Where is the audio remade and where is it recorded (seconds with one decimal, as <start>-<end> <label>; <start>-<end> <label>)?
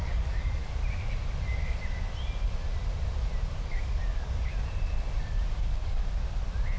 0.0-0.6 remade; 0.6-3.6 recorded; 3.6-4.5 remade; 4.5-5.6 recorded; 5.6-6.0 remade; 6.0-6.8 recorded